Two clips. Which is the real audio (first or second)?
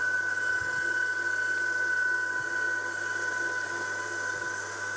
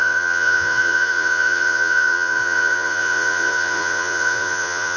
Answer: first